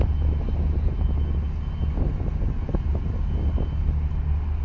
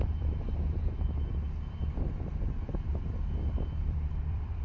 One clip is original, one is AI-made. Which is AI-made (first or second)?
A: second